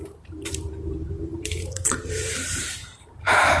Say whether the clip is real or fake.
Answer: fake